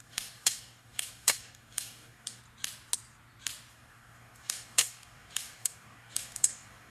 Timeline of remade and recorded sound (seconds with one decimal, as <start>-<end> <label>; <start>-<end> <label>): 0.0-2.4 remade; 2.4-3.7 recorded; 3.7-6.9 remade